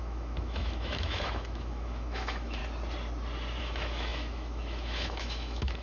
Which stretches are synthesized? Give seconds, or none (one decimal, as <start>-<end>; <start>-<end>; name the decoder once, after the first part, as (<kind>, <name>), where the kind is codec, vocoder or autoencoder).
0.0-2.6 (autoencoder, DAC-VAE); 3.6-5.8